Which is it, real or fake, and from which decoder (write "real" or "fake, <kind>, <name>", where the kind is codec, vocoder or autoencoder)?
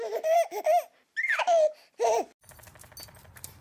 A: real